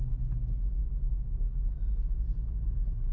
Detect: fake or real real